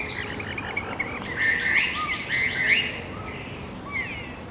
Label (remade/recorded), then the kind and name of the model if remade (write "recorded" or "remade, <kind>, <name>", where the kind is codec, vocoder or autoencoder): recorded